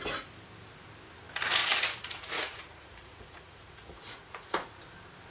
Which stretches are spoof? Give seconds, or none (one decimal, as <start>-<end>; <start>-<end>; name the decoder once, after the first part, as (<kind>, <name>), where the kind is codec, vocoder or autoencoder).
1.6-4.8 (vocoder, Vocos)